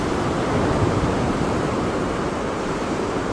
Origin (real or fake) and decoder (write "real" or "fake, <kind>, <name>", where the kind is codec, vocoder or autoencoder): fake, vocoder, BigVGAN v2